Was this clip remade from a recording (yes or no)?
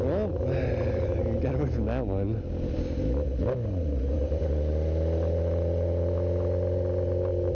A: no